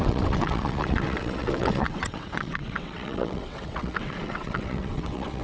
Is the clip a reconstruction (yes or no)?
yes